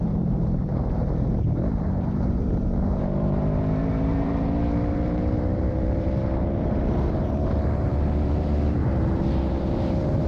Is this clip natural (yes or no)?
no